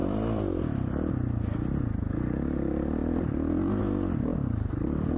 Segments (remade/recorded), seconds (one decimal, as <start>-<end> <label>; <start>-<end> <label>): 0.0-1.1 remade; 1.1-3.0 recorded; 3.0-3.8 remade; 3.8-4.3 recorded; 4.3-5.2 remade